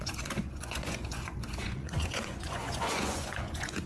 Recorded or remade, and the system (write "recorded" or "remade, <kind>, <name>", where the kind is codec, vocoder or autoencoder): remade, vocoder, Vocos